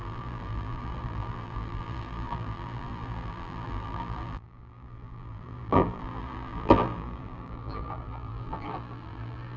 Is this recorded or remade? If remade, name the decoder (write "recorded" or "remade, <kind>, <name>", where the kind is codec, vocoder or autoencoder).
remade, vocoder, BigVGAN v2